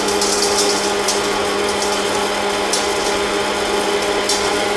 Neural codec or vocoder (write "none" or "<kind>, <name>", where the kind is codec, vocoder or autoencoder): none